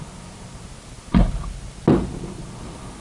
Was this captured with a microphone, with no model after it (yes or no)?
yes